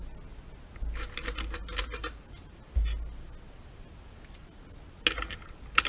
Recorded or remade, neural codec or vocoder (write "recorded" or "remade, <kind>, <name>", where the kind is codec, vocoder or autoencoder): recorded